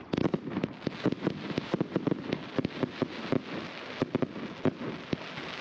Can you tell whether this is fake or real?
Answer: real